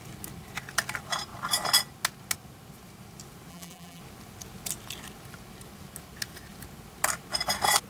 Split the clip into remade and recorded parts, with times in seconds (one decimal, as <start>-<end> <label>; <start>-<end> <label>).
0.0-3.5 recorded; 3.5-4.0 remade; 4.0-7.9 recorded